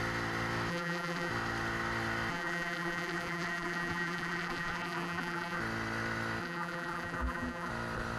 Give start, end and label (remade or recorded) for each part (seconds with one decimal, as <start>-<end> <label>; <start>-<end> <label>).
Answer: 0.0-0.7 recorded; 0.7-1.3 remade; 1.3-2.3 recorded; 2.3-5.6 remade; 5.6-6.4 recorded; 6.4-7.7 remade; 7.7-8.2 recorded